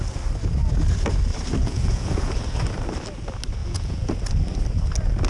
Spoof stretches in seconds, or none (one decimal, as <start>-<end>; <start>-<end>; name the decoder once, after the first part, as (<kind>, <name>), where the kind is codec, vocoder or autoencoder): 1.6-2.4 (vocoder, Vocos); 3.6-4.1